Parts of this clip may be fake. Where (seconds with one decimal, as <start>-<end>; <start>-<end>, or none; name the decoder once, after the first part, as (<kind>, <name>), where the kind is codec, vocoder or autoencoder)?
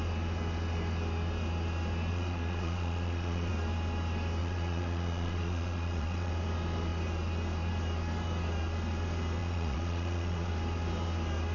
2.1-3.5 (vocoder, Vocos); 4.4-6.3; 9.4-10.5